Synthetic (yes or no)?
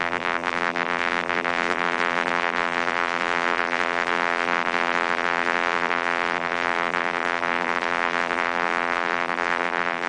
yes